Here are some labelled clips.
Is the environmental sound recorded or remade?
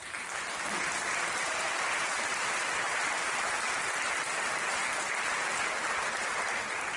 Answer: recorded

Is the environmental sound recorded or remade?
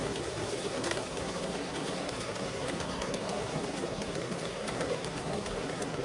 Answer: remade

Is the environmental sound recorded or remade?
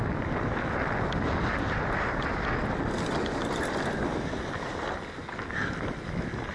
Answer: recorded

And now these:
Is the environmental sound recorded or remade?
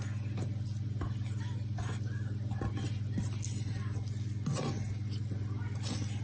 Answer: recorded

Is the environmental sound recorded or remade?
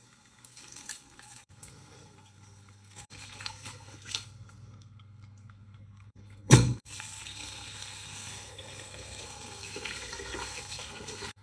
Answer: remade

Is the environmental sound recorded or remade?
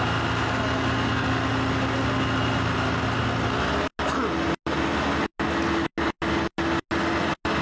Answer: recorded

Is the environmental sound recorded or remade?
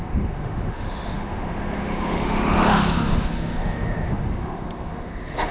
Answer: remade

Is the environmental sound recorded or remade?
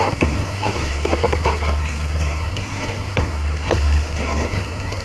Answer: remade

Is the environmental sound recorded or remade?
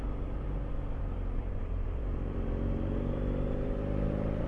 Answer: remade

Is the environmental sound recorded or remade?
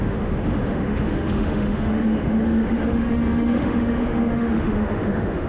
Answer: remade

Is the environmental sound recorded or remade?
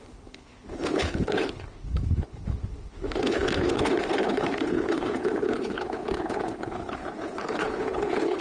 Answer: remade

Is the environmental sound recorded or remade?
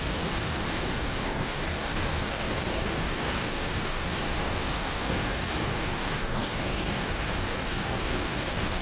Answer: remade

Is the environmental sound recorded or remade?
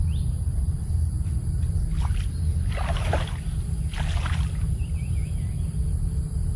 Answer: recorded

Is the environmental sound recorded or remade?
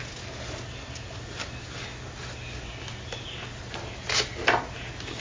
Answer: recorded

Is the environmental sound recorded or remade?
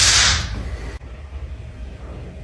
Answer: recorded